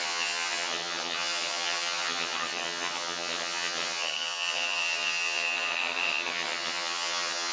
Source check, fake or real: fake